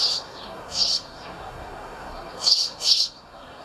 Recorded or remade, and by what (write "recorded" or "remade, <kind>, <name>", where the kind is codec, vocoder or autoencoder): remade, codec, SNAC